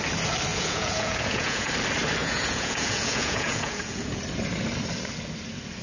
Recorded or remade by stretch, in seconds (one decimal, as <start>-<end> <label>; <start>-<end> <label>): 0.0-0.5 recorded; 0.5-1.7 remade; 1.7-2.2 recorded; 2.2-4.2 remade; 4.2-5.8 recorded